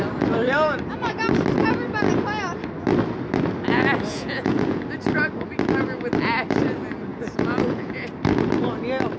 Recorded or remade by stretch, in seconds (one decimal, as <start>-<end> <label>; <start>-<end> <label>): 0.0-4.1 recorded; 4.1-4.8 remade; 4.8-7.1 recorded; 7.1-7.9 remade; 7.9-9.2 recorded